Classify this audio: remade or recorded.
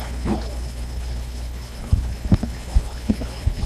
remade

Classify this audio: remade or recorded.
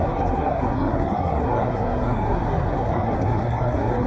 remade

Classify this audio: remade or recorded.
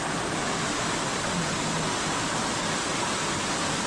recorded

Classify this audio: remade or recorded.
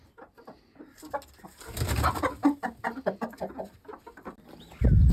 recorded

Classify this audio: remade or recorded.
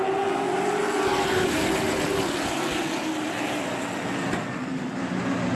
recorded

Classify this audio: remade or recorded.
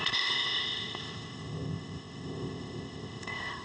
remade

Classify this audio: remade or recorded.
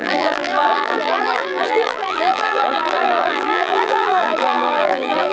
remade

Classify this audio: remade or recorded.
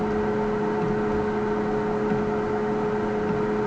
recorded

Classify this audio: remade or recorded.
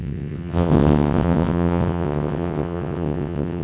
remade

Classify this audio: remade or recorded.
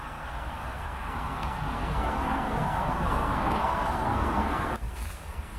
remade